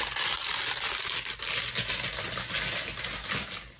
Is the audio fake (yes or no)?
no